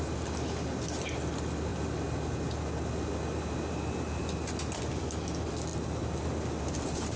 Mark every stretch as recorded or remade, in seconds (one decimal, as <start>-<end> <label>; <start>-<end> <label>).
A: 0.0-1.7 recorded; 1.7-4.8 remade; 4.8-5.7 recorded; 5.7-6.6 remade; 6.6-7.2 recorded